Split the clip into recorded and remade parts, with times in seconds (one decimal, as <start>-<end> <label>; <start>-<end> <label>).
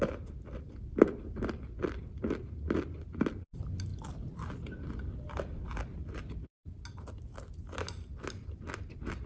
0.0-9.3 recorded